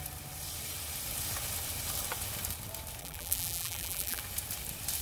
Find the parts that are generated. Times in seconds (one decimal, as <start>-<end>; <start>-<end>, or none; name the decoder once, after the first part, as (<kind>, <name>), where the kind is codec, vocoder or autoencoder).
3.0-4.2 (vocoder, BigVGAN v2)